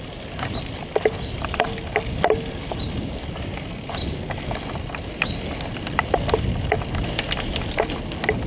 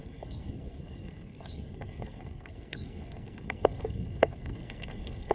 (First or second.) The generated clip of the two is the second